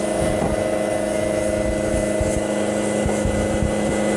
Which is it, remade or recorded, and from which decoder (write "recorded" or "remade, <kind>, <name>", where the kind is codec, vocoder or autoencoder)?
recorded